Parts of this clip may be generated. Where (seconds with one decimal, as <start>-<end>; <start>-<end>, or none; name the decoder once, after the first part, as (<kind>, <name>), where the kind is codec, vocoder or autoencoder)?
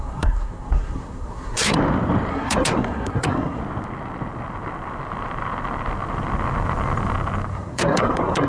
0.0-1.8 (codec, SNAC); 2.3-3.6; 7.5-8.5